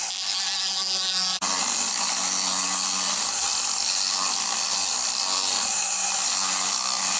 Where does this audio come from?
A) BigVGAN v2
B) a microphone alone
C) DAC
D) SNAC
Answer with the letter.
B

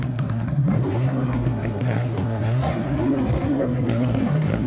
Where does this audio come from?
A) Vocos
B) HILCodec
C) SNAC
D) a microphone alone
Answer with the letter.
C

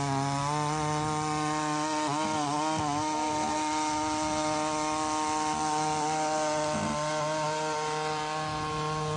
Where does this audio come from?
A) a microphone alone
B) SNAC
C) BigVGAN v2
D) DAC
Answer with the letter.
A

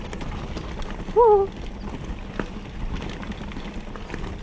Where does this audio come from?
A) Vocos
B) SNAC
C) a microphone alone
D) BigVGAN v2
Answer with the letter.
C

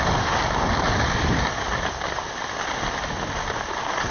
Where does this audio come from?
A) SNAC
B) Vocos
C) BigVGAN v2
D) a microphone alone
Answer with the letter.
D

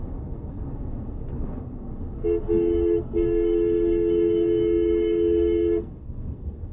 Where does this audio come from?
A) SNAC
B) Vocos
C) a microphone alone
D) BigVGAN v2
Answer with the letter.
A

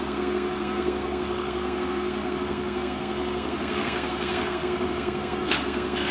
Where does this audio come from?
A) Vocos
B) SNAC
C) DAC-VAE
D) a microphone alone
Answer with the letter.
B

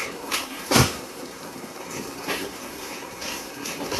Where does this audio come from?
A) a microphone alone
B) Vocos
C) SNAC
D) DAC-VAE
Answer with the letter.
C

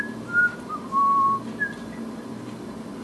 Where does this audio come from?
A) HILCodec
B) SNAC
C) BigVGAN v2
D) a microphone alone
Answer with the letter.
D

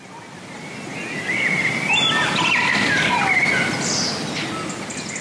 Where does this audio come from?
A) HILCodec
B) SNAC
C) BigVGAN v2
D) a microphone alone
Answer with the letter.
D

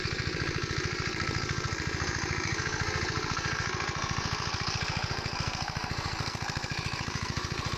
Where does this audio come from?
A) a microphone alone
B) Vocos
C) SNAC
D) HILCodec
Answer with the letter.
C